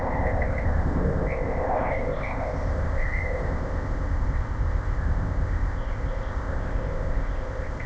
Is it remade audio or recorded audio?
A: remade